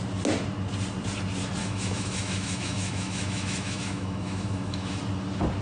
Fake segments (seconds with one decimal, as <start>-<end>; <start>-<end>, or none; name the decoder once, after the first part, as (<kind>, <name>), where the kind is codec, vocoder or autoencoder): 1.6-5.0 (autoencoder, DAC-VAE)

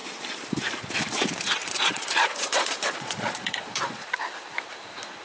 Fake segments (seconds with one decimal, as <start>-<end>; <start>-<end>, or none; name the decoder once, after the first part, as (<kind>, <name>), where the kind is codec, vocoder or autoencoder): 1.6-4.1 (vocoder, Vocos)

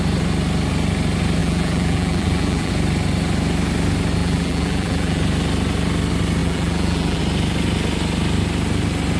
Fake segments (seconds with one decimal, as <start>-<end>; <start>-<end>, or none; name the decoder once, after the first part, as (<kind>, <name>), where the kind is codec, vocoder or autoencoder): 1.4-2.7 (vocoder, BigVGAN v2); 4.2-5.2; 6.4-7.2